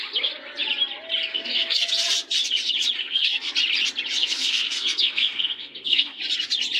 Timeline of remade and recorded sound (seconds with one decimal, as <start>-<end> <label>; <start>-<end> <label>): 0.0-1.3 recorded; 1.3-1.9 remade; 1.9-3.0 recorded; 3.0-3.5 remade; 3.5-4.2 recorded; 4.2-6.2 remade; 6.2-6.8 recorded

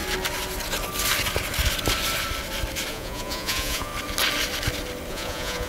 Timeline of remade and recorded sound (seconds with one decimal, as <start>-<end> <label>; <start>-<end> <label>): 0.0-2.9 recorded; 2.9-3.9 remade; 3.9-5.1 recorded; 5.1-5.7 remade

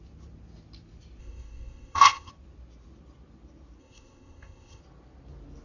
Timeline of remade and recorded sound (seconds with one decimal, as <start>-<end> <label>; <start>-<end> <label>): 0.0-1.2 recorded; 1.2-2.3 remade; 2.3-3.8 recorded; 3.8-4.8 remade; 4.8-5.6 recorded